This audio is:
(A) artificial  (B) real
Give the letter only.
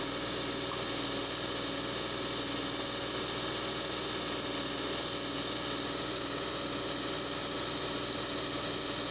B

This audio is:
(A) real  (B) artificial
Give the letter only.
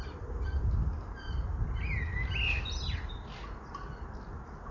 A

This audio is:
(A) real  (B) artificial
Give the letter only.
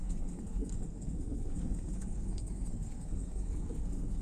B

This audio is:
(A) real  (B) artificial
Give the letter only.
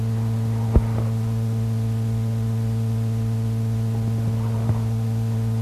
A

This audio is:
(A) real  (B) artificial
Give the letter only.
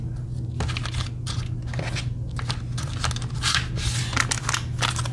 A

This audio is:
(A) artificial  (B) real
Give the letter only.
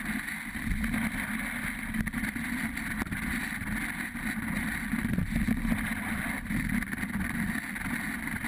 B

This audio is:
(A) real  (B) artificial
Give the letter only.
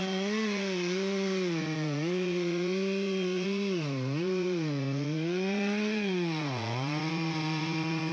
B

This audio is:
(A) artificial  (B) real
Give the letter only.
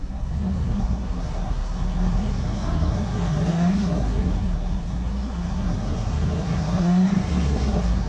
A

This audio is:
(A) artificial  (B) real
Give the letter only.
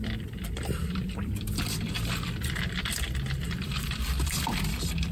A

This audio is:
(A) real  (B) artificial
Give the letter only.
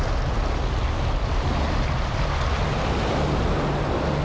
A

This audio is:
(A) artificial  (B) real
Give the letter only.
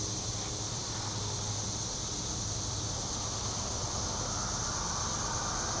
B